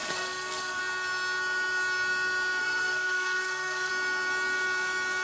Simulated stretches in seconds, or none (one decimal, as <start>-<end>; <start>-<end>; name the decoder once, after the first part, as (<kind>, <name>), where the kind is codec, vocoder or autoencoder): 0.0-0.8 (codec, SNAC); 2.6-3.9